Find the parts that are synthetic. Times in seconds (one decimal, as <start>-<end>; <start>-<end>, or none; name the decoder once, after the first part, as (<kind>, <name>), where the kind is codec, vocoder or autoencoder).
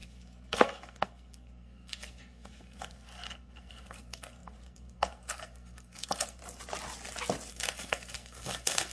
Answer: 0.0-6.4 (codec, SNAC); 7.5-8.9